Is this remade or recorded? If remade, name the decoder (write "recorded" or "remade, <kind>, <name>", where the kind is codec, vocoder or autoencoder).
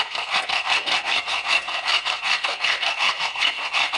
remade, codec, SNAC